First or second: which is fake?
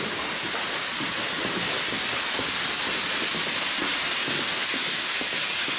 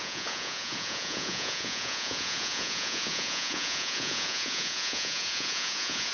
second